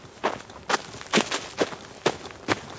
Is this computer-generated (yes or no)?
no